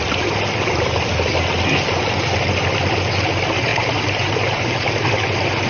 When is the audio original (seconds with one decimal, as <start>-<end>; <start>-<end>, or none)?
0.0-3.7; 4.9-5.7